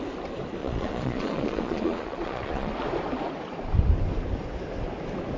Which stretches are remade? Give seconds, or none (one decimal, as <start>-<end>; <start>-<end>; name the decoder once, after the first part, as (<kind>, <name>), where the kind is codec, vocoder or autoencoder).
0.6-2.7 (vocoder, Vocos)

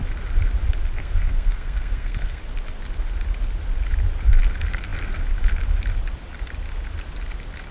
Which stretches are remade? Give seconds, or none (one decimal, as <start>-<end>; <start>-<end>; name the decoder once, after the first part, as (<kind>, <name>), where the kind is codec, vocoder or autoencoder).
1.0-2.4 (codec, SNAC)